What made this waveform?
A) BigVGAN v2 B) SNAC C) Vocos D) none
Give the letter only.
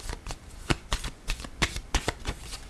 C